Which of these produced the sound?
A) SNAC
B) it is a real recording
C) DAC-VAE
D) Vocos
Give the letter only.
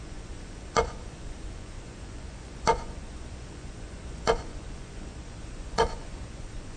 D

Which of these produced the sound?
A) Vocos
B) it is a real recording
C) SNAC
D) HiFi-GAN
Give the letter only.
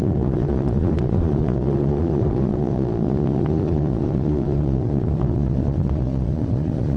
A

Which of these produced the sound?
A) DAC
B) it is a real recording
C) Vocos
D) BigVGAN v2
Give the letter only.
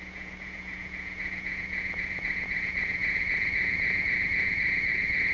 C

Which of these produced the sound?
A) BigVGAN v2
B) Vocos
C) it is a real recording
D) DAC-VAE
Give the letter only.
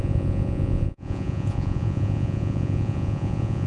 B